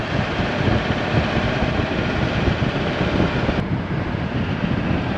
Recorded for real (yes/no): yes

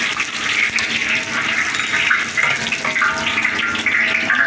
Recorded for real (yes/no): yes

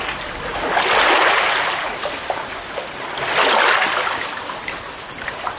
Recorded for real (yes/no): yes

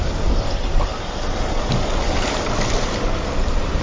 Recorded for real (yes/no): yes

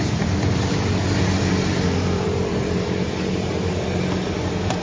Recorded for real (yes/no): no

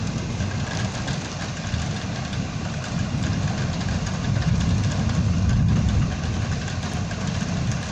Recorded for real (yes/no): yes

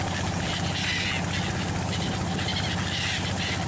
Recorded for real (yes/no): yes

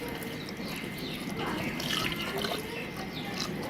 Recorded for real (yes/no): yes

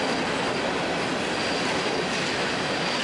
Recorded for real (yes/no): yes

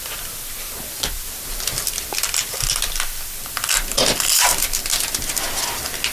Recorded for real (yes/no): yes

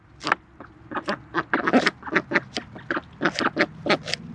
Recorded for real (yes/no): yes